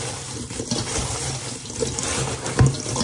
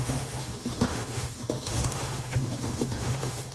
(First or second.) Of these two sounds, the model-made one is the second